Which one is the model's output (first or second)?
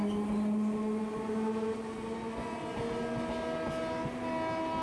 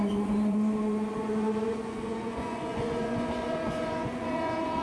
second